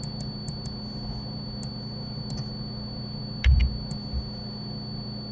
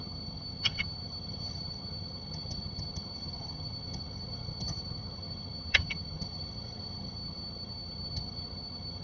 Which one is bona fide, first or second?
first